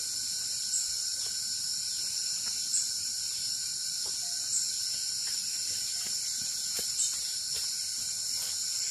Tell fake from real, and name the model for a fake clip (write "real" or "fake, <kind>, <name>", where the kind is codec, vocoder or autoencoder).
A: real